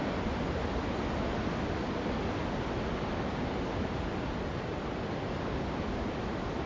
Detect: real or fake real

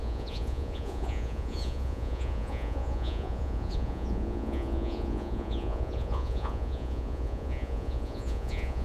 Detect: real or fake fake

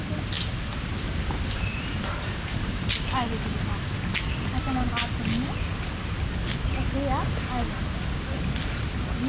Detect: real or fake real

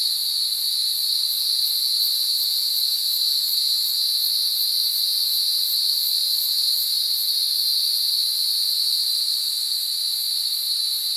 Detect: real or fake real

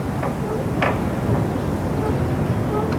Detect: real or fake real